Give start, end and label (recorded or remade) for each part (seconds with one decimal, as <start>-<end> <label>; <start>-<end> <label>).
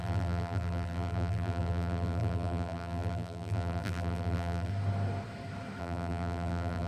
0.0-4.7 remade; 4.7-5.8 recorded; 5.8-6.9 remade